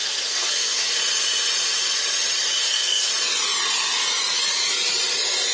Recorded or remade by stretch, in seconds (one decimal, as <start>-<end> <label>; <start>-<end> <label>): 0.0-0.9 remade; 0.9-2.6 recorded; 2.6-3.1 remade; 3.1-5.5 recorded